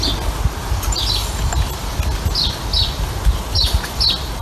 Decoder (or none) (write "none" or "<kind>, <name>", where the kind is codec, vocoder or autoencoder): none